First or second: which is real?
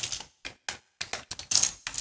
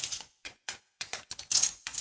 first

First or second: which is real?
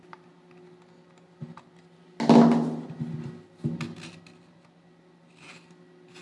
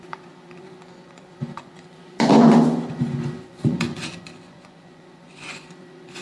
first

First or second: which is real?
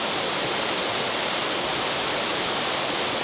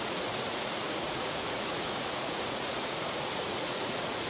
first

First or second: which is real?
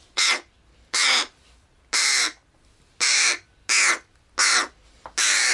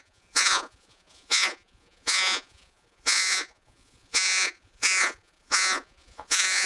first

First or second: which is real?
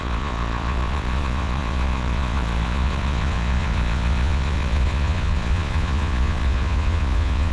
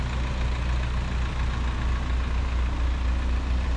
second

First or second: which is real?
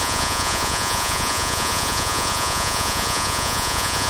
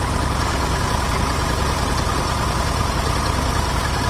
second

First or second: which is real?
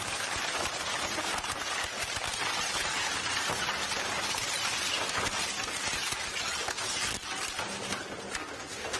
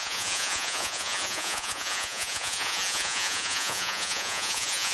first